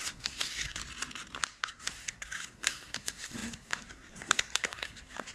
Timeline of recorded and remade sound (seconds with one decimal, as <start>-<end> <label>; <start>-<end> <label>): 0.0-0.8 remade; 0.8-1.4 recorded; 1.4-5.3 remade